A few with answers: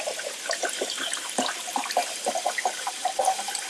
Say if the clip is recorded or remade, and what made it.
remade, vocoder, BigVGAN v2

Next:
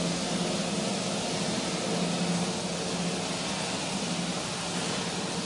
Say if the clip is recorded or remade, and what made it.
recorded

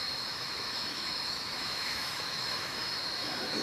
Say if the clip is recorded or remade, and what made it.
remade, autoencoder, DAC-VAE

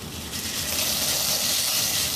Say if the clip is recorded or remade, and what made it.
recorded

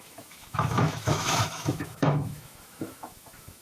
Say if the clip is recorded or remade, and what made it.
remade, autoencoder, DAC-VAE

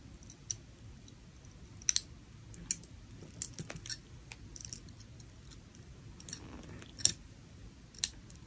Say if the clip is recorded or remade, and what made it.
recorded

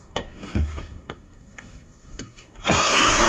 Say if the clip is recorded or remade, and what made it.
remade, codec, SNAC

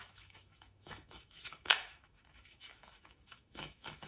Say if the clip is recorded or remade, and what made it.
remade, autoencoder, DAC-VAE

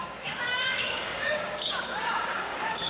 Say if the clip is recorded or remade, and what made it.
remade, codec, DAC